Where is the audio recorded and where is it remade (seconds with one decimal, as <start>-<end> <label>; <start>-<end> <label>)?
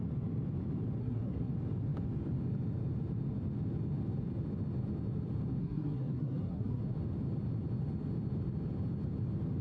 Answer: 0.0-1.0 recorded; 1.0-1.5 remade; 1.5-5.6 recorded; 5.6-6.8 remade; 6.8-9.6 recorded